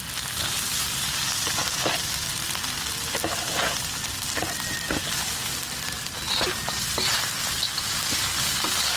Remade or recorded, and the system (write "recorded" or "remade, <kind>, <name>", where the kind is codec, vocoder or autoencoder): recorded